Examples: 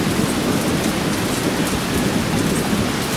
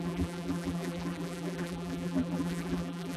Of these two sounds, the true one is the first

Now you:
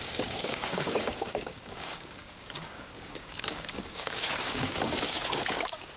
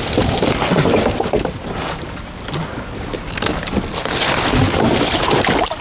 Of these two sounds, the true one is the second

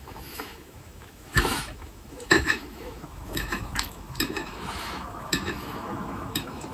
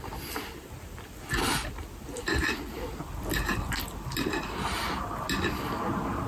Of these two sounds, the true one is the second